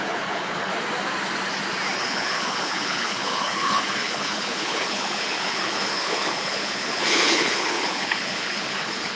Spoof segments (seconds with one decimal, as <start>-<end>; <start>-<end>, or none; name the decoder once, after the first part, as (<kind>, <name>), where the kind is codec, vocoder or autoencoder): 0.0-0.7 (codec, HILCodec); 2.0-9.2